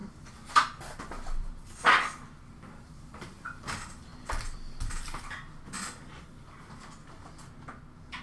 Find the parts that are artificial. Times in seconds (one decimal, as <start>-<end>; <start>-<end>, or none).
none